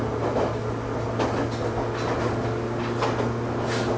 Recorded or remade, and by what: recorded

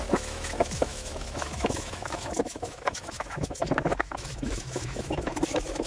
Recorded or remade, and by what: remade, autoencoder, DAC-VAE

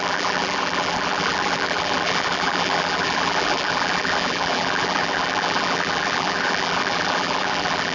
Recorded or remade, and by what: remade, vocoder, BigVGAN v2